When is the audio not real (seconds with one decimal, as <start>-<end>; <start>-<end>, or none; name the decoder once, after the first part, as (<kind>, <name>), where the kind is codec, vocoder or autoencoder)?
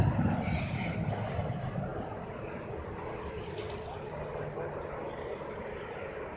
none